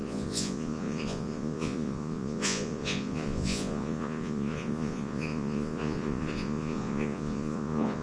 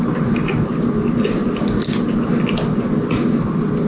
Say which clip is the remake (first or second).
first